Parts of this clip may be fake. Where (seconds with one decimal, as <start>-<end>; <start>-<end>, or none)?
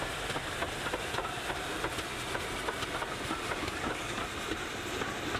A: 3.6-4.2